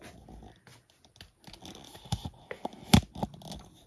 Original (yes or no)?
yes